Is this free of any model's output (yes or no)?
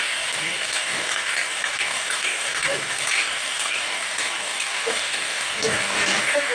no